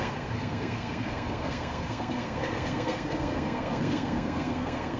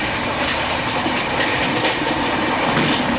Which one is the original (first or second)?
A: second